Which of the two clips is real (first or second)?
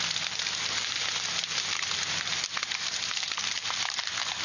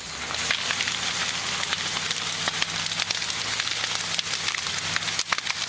second